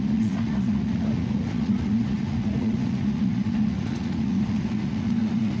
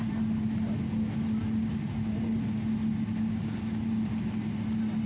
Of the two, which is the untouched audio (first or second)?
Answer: second